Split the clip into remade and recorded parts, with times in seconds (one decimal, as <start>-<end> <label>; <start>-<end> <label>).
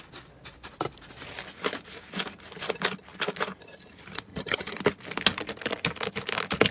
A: 0.0-4.3 recorded; 4.3-4.8 remade; 4.8-6.7 recorded